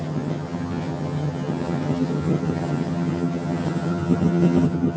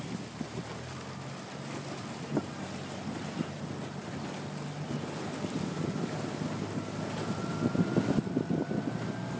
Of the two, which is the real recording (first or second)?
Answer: second